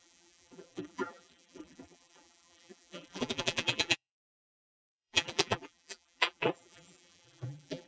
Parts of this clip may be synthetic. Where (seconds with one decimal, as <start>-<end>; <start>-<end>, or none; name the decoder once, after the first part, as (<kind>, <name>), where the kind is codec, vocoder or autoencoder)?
0.0-7.9 (vocoder, BigVGAN v2)